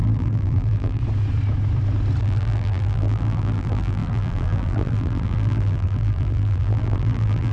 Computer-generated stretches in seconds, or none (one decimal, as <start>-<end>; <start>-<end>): 0.0-1.0; 2.2-7.5